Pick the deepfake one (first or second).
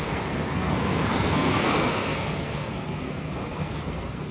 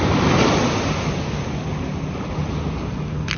first